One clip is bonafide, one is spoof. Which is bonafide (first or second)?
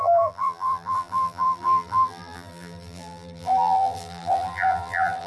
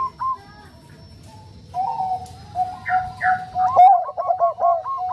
second